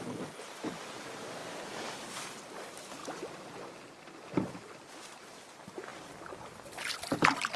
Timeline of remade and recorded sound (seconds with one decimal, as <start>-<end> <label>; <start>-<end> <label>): 0.0-7.6 recorded